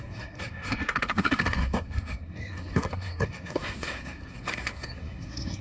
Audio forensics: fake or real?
fake